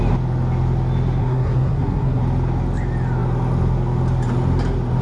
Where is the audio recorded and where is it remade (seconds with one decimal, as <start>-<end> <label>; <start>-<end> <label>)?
0.0-1.2 recorded; 1.2-2.2 remade; 2.2-5.0 recorded